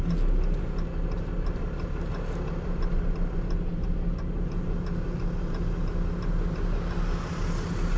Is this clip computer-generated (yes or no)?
no